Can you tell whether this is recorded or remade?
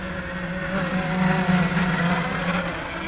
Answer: recorded